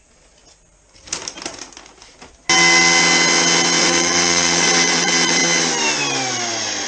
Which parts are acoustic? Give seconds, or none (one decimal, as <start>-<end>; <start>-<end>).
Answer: 0.4-3.8; 5.4-6.9